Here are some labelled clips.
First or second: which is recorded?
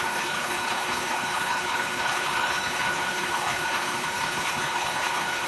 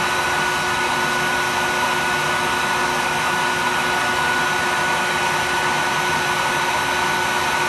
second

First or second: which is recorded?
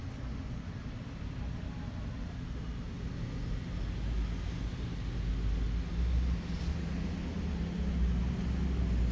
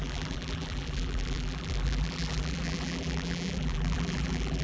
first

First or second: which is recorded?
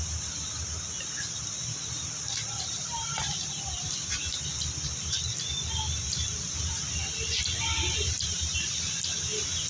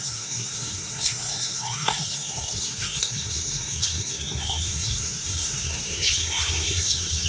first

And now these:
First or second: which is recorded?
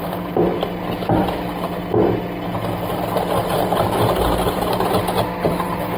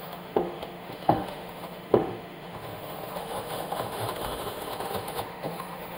first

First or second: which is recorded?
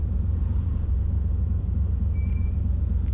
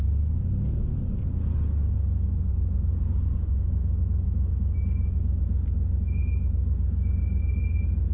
second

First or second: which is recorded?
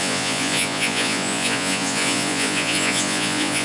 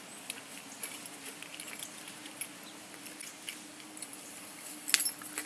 second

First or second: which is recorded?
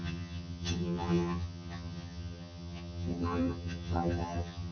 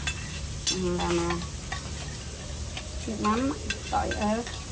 second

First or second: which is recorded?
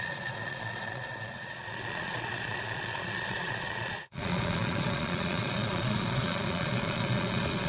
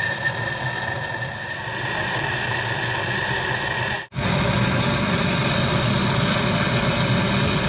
second